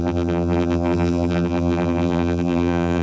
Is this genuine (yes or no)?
no